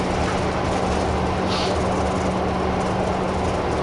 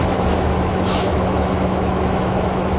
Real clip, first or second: first